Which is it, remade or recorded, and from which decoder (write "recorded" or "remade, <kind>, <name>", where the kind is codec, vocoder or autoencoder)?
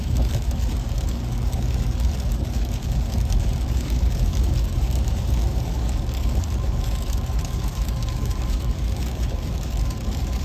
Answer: remade, codec, DAC